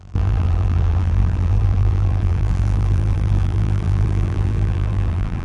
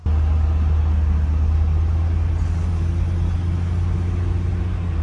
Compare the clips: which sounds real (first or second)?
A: second